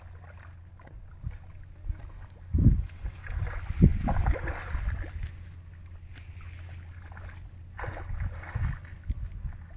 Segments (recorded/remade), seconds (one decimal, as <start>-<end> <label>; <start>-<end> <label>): 0.0-9.8 recorded